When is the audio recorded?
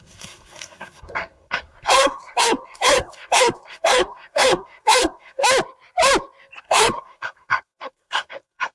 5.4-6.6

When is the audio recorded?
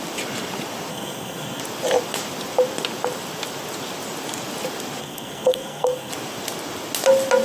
0.0-0.9; 1.6-5.0; 6.1-7.4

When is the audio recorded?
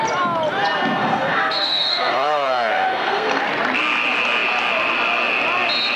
0.0-1.0; 3.4-6.0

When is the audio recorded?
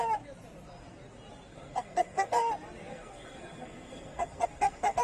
0.0-1.5; 2.5-2.9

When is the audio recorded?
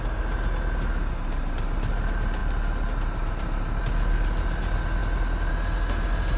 0.0-6.4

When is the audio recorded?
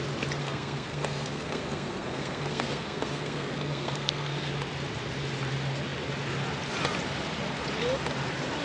0.0-0.4; 4.5-8.6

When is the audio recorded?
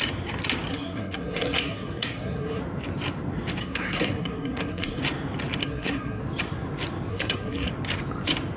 0.0-0.7; 2.6-3.6; 5.0-5.6; 6.2-7.1; 7.7-8.6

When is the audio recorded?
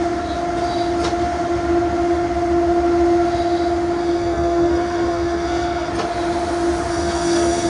0.0-4.0; 5.9-6.9